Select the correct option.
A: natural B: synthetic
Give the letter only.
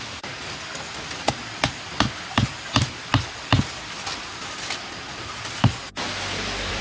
A